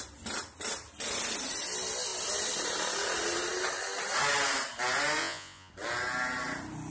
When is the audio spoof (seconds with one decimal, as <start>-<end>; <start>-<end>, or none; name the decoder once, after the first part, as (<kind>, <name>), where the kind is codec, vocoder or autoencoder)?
5.2-5.7 (vocoder, Vocos)